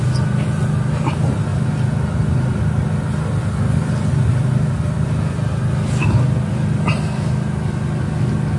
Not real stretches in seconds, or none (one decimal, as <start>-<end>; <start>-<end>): none